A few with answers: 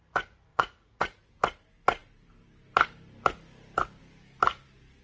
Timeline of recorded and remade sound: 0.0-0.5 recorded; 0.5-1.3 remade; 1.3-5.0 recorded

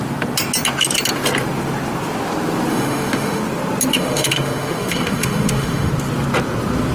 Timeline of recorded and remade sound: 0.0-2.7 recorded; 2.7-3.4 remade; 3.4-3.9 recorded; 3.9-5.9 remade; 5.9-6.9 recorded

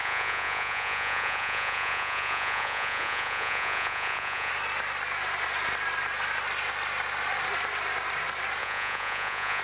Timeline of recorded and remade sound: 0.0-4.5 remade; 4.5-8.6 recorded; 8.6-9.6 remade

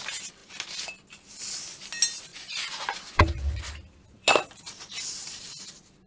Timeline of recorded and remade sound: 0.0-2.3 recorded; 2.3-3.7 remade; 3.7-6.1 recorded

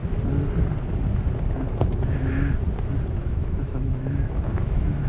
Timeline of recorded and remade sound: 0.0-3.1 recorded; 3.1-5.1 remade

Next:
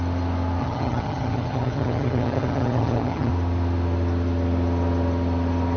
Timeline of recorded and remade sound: 0.0-0.6 recorded; 0.6-3.3 remade; 3.3-5.8 recorded

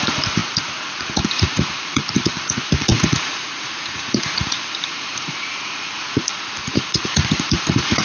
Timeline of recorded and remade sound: 0.0-8.0 remade